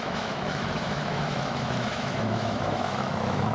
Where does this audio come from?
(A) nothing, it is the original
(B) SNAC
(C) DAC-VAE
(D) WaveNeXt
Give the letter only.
C